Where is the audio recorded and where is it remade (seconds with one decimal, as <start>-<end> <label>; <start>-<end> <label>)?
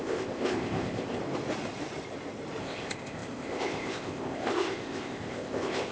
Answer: 0.0-1.2 remade; 1.2-2.6 recorded; 2.6-5.9 remade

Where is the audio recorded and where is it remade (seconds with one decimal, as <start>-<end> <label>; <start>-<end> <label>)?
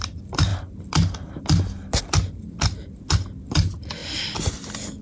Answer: 0.0-0.5 remade; 0.5-3.5 recorded; 3.5-4.0 remade; 4.0-5.0 recorded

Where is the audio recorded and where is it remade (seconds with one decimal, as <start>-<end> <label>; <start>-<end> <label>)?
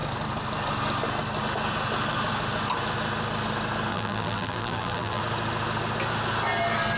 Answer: 0.0-3.9 recorded; 3.9-5.2 remade; 5.2-7.0 recorded